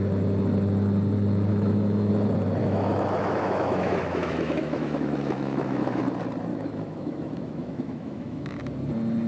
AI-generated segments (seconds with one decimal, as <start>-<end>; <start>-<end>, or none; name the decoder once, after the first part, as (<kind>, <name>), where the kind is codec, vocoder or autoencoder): 1.5-2.1 (autoencoder, DAC-VAE); 2.6-6.0; 6.5-8.6